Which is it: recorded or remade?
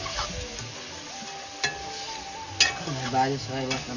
recorded